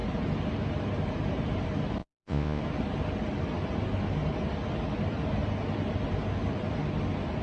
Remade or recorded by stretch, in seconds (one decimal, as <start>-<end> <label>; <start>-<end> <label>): 0.0-2.0 recorded; 2.0-2.6 remade; 2.6-7.4 recorded